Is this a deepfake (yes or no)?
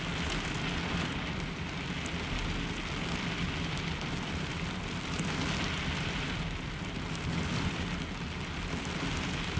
no